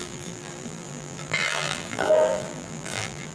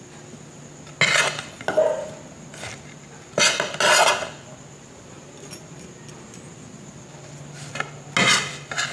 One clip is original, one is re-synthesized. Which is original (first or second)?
second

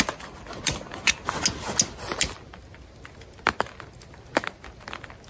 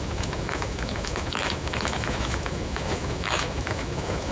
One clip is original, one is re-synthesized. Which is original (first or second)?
first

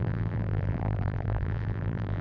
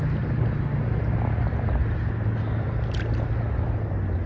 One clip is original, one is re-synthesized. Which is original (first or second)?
second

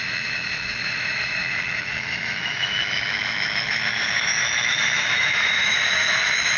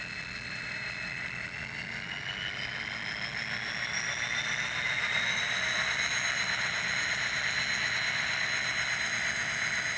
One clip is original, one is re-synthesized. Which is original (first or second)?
second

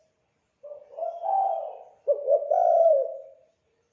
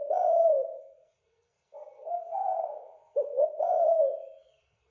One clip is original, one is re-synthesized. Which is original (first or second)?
first